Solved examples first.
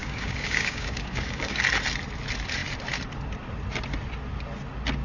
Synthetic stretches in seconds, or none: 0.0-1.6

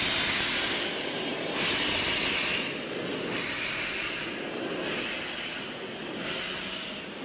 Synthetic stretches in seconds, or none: none

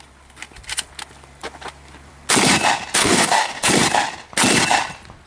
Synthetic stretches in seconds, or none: 3.0-3.7

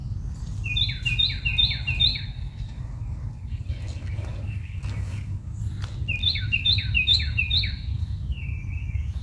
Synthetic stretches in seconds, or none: 2.1-5.6; 6.2-9.2

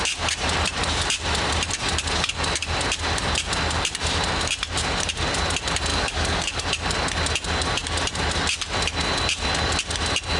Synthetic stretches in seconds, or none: 5.9-6.6

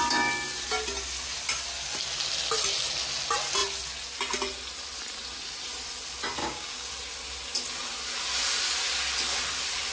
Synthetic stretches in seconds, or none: 6.4-6.9

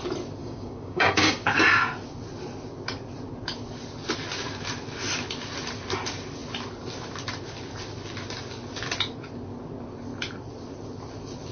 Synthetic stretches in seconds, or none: 0.4-1.8